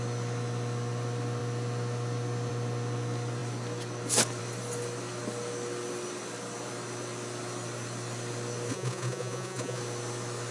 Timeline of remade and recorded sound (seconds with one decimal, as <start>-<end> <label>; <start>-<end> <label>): 0.0-8.7 recorded; 8.7-9.8 remade; 9.8-10.5 recorded